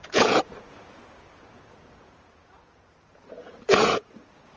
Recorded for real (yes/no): no